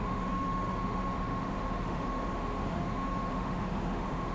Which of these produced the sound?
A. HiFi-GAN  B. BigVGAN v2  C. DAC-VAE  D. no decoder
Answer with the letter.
C